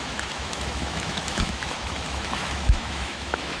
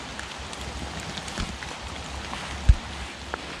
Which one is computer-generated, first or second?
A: first